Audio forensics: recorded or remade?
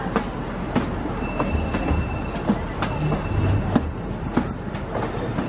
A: recorded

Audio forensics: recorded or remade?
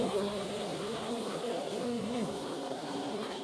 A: remade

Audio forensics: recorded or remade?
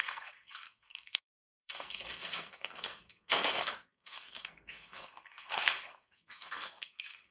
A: remade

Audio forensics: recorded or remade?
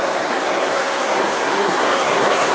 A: remade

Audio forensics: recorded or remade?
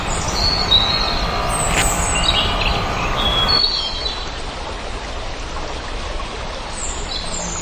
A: recorded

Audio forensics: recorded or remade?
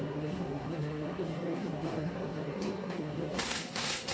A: remade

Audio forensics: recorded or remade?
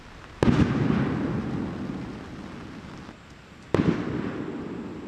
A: recorded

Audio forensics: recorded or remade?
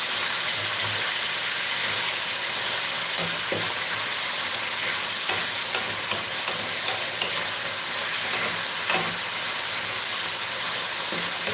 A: recorded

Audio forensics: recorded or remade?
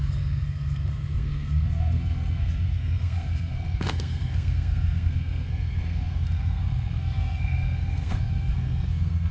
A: remade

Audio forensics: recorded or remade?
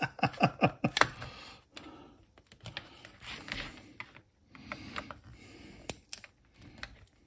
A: recorded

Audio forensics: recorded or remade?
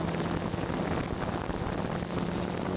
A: recorded